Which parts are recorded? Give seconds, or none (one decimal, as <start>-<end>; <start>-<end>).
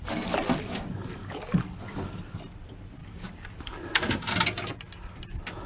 0.0-1.2; 1.8-3.0; 4.1-5.7